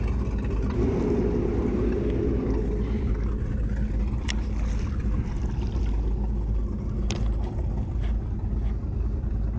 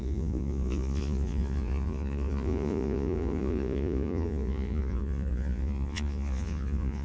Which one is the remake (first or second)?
second